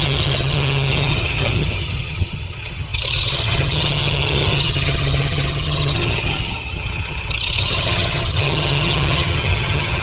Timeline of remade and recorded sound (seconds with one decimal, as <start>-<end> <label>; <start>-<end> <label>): 0.0-10.0 remade